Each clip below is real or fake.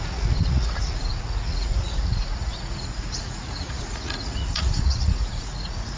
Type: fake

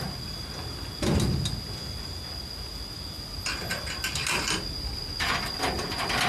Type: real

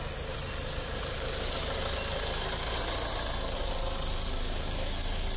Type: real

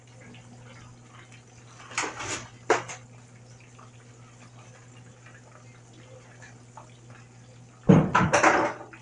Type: real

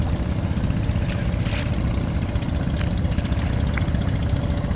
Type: real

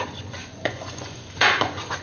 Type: fake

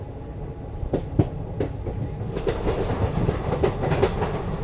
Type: real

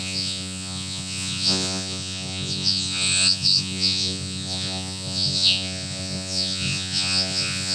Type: fake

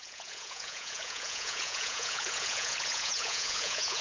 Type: fake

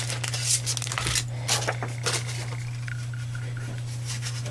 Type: real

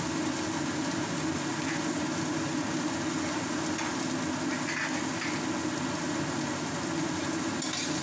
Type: real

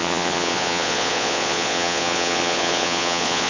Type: fake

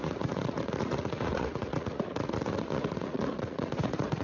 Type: fake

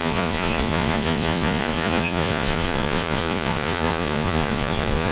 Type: fake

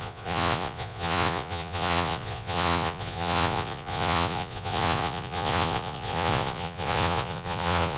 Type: fake